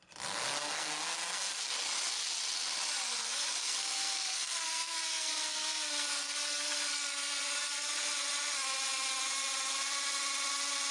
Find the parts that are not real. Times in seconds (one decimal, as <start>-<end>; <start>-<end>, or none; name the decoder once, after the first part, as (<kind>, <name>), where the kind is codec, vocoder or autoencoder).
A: 0.6-1.7 (codec, SNAC); 3.2-7.9